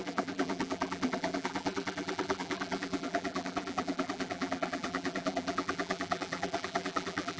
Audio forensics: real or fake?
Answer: fake